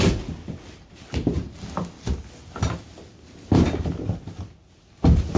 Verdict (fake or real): real